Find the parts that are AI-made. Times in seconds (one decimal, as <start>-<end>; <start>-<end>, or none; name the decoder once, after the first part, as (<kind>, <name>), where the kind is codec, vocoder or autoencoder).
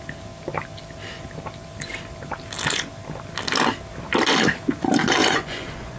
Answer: 5.2-6.0 (vocoder, Vocos)